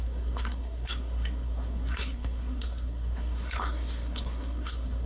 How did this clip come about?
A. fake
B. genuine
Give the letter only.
A